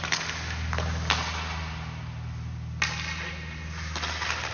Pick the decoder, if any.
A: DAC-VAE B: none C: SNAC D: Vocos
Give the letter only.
B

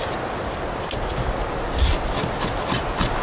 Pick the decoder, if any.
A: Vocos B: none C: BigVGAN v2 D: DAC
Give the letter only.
B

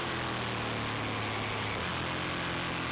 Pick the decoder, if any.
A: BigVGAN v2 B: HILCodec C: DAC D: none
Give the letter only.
D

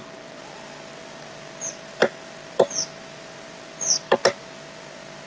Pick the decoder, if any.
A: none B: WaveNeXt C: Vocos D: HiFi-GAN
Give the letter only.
A